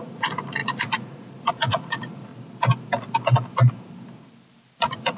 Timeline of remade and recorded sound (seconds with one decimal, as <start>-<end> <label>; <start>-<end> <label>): 0.0-2.3 remade; 2.3-4.8 recorded; 4.8-5.2 remade

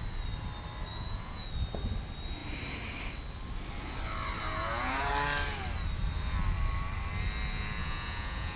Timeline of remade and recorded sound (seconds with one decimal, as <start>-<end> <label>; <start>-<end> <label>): 0.0-0.9 recorded; 0.9-1.5 remade; 1.5-4.4 recorded; 4.4-5.1 remade; 5.1-7.8 recorded; 7.8-8.6 remade

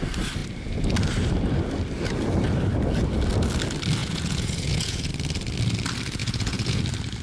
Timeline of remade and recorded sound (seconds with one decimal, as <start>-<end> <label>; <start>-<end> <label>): 0.0-4.0 recorded; 4.0-5.1 remade; 5.1-6.2 recorded; 6.2-6.8 remade; 6.8-7.2 recorded

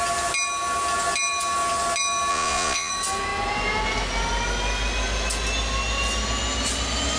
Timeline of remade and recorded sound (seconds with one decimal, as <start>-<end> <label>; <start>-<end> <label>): 0.0-2.3 recorded; 2.3-2.9 remade; 2.9-7.2 recorded

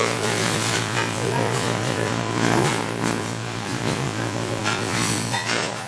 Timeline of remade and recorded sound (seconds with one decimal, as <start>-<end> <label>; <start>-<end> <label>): 0.0-5.9 remade

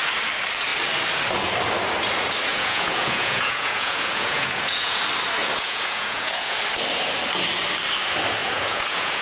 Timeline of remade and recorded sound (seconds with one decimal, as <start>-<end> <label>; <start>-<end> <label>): 0.0-2.5 recorded; 2.5-5.0 remade; 5.0-5.4 recorded; 5.4-6.6 remade; 6.6-8.4 recorded; 8.4-9.2 remade

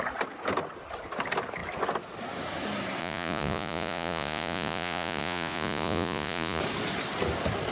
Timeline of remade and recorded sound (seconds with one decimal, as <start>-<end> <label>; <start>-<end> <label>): 0.0-3.0 recorded; 3.0-6.6 remade; 6.6-7.7 recorded